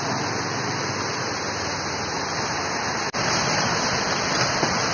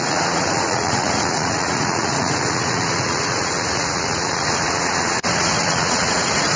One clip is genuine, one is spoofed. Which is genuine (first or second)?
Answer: first